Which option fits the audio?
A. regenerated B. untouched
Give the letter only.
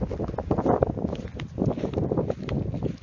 B